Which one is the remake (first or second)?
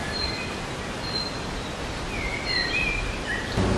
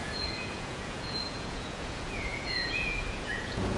second